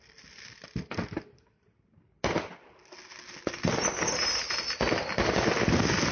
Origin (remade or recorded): recorded